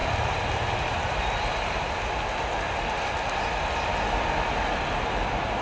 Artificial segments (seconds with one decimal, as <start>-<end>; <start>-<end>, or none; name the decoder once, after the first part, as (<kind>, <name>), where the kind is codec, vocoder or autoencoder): none